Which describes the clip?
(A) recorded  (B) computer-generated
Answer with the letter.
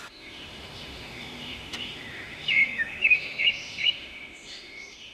B